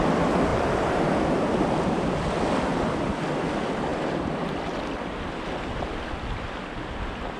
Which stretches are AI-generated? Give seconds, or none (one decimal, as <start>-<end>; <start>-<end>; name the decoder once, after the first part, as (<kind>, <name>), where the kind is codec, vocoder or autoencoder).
2.7-3.5 (vocoder, BigVGAN v2); 3.9-4.9